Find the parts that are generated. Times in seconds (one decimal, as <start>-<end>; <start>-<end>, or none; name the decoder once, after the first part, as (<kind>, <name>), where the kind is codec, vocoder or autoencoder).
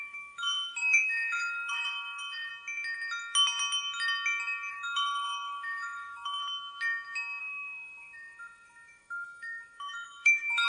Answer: 0.0-2.5 (autoencoder, DAC-VAE); 4.7-6.4; 7.4-10.7